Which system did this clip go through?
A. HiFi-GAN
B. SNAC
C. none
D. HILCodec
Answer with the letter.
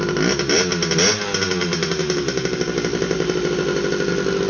C